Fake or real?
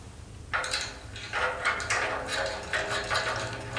real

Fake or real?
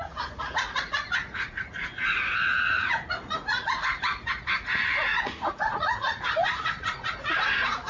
fake